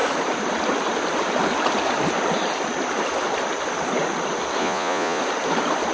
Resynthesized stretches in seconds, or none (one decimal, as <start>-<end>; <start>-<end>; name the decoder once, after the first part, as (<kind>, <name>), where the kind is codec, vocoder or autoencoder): 4.6-5.2 (vocoder, Vocos)